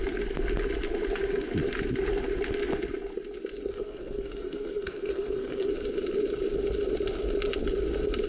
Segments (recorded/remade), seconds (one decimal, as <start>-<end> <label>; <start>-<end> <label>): 0.0-3.7 recorded; 3.7-5.7 remade; 5.7-8.3 recorded